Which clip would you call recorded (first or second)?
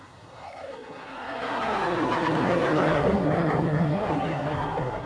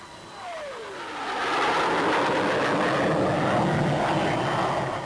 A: second